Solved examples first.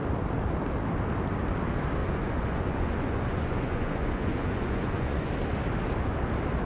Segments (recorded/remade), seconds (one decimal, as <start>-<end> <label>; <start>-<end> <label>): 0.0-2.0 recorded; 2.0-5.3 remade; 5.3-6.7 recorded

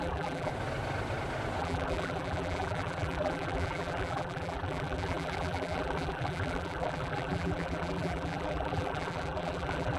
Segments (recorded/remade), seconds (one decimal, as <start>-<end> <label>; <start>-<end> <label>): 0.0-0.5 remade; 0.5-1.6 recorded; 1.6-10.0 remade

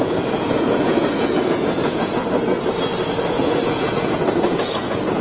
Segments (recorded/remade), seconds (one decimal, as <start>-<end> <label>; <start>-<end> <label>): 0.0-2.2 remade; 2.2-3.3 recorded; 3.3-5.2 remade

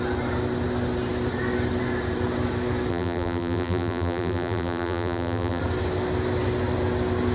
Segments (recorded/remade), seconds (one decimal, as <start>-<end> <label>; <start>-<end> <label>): 0.0-2.9 recorded; 2.9-5.6 remade; 5.6-7.3 recorded

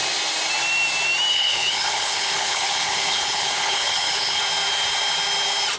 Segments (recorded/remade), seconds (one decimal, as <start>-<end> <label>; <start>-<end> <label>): 0.0-1.3 recorded; 1.3-4.4 remade; 4.4-5.8 recorded

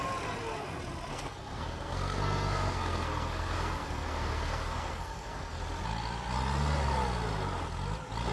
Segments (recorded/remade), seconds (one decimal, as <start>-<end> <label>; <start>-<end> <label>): 0.0-1.1 recorded; 1.1-5.6 remade; 5.6-8.3 recorded

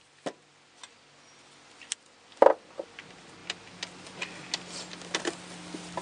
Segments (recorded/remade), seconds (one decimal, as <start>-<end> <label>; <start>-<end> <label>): 0.0-6.0 recorded

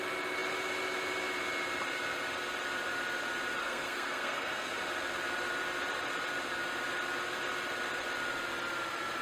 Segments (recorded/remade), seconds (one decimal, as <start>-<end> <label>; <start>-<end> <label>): 0.0-3.6 recorded; 3.6-4.8 remade; 4.8-9.2 recorded